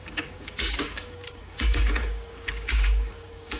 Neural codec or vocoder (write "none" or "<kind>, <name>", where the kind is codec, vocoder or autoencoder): codec, DAC